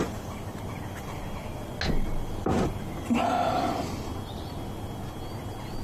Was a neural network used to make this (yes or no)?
no